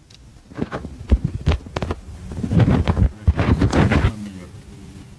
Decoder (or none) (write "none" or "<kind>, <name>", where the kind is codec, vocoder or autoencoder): none